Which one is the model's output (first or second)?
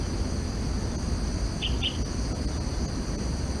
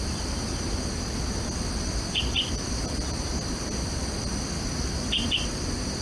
second